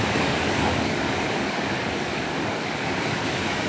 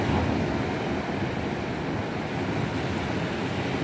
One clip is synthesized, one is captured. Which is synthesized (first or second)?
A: first